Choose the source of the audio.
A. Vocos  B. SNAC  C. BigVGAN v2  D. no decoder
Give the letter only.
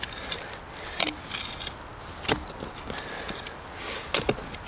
D